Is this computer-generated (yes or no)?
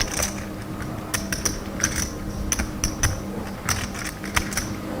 no